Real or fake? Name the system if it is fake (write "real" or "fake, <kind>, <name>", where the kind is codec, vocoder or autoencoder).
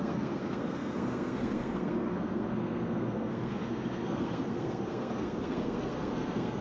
fake, codec, SNAC